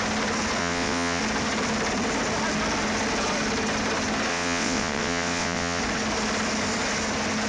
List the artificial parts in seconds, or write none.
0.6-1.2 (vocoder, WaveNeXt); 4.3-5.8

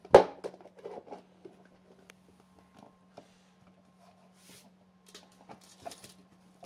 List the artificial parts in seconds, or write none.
1.6-6.7 (vocoder, BigVGAN v2)